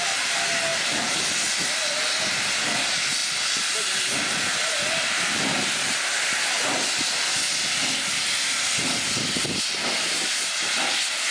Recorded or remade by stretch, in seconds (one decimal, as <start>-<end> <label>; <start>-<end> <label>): 0.0-11.3 recorded